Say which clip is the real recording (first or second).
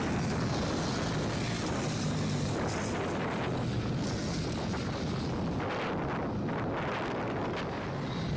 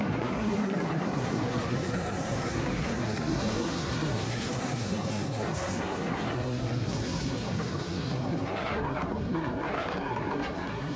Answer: first